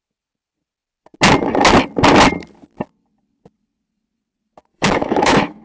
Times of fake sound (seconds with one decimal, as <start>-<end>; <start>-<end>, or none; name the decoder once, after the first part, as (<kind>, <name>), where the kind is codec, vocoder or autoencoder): 4.7-5.6 (autoencoder, DAC-VAE)